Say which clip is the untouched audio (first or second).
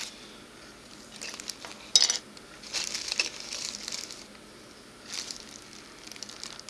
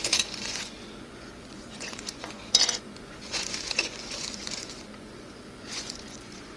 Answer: first